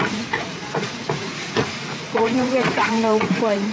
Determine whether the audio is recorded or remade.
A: remade